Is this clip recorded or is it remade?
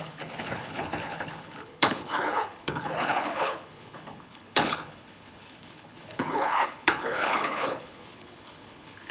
remade